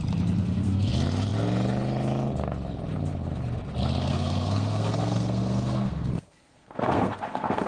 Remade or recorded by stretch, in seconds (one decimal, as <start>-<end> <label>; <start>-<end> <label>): 0.0-0.4 recorded; 0.4-0.9 remade; 0.9-4.0 recorded; 4.0-7.7 remade